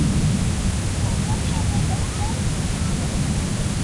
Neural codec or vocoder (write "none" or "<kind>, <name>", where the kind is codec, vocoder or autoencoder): none